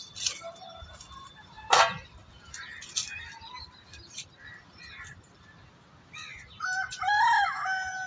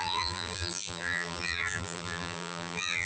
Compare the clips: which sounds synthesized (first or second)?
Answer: second